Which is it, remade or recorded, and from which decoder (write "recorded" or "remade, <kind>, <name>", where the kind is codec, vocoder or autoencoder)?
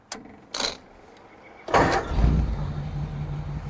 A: recorded